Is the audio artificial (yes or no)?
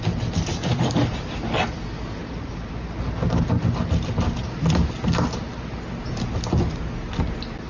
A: no